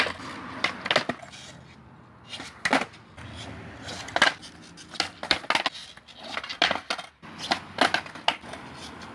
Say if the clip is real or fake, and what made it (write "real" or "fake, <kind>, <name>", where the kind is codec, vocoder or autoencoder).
real